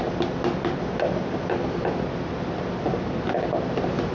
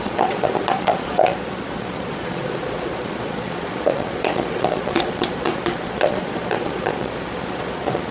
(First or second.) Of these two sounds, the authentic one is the first